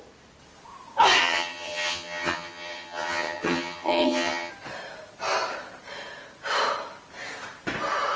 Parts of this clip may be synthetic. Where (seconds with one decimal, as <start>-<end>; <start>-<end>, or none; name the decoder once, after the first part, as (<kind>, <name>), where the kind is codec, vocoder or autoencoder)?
1.2-4.5 (vocoder, HiFi-GAN)